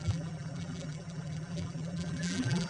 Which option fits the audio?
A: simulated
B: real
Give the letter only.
A